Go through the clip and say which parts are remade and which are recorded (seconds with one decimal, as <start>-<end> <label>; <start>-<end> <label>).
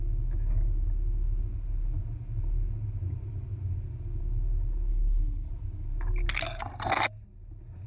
0.0-4.9 recorded; 4.9-5.5 remade; 5.5-7.9 recorded